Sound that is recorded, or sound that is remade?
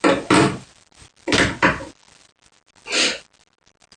recorded